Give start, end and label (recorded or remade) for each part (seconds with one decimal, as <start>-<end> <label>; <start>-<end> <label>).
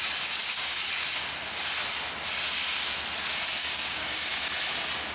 0.0-0.4 recorded; 0.4-0.9 remade; 0.9-3.6 recorded; 3.6-4.4 remade; 4.4-5.1 recorded